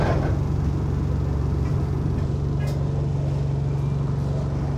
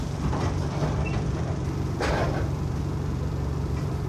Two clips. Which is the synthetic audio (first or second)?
second